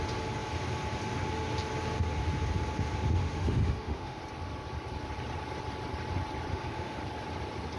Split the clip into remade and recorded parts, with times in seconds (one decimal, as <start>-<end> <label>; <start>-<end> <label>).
0.0-3.2 recorded; 3.2-4.2 remade; 4.2-6.5 recorded; 6.5-7.0 remade; 7.0-7.8 recorded